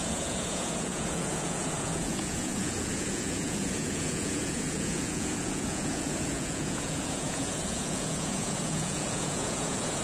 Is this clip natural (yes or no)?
no